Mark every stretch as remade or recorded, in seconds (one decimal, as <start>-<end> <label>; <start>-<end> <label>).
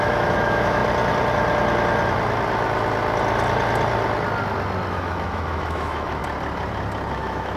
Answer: 0.0-0.8 remade; 0.8-4.9 recorded; 4.9-6.2 remade; 6.2-7.1 recorded; 7.1-7.6 remade